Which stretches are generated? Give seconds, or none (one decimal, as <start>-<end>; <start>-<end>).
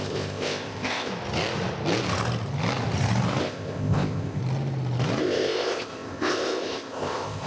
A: 0.0-1.1; 3.4-4.4; 5.2-7.5